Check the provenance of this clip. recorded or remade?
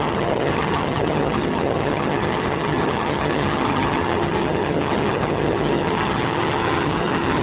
remade